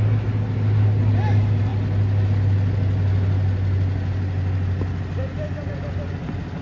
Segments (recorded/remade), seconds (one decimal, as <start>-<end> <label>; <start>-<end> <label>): 0.0-6.6 recorded